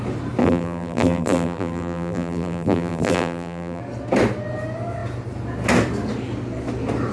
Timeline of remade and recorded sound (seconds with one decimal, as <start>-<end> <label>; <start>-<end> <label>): 0.0-0.4 recorded; 0.4-3.8 remade; 3.8-7.1 recorded

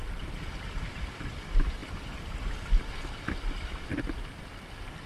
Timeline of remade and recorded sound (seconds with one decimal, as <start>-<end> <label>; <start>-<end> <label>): 0.0-5.1 recorded

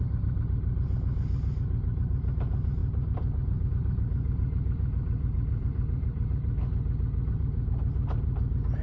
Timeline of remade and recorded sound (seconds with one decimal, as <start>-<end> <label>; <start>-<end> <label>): 0.0-6.6 remade; 6.6-7.3 recorded; 7.3-8.8 remade

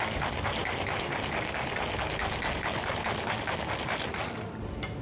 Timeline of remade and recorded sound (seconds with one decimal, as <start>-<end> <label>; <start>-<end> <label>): 0.0-0.6 remade; 0.6-3.6 recorded; 3.6-5.0 remade

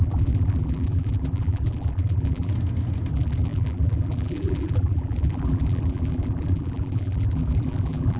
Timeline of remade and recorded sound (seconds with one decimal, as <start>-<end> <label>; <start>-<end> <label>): 0.0-2.5 remade; 2.5-3.1 recorded; 3.1-8.2 remade

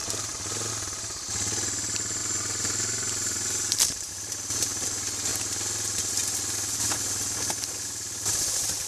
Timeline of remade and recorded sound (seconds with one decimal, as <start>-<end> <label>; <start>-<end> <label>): 0.0-0.7 remade; 0.7-2.2 recorded; 2.2-4.1 remade; 4.1-8.9 recorded

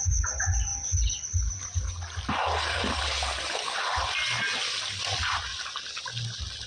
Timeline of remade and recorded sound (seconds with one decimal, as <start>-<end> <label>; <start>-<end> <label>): 0.0-6.7 recorded